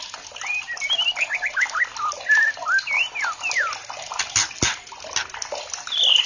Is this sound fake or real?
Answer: real